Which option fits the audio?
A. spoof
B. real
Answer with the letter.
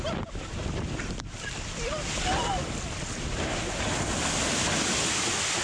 B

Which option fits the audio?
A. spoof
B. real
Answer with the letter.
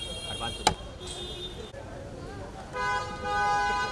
B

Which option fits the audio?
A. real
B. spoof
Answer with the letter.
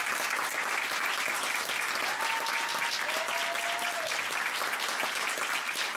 A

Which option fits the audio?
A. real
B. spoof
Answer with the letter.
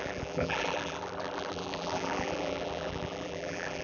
B